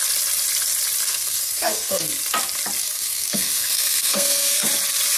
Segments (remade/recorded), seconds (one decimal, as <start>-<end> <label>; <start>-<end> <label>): 0.0-1.1 recorded; 1.1-2.1 remade; 2.1-2.8 recorded; 2.8-4.7 remade; 4.7-5.2 recorded